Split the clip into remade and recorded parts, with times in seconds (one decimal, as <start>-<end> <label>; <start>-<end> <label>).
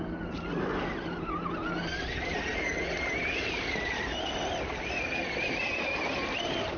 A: 0.0-6.8 recorded